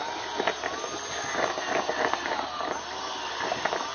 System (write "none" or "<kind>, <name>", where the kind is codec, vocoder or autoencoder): none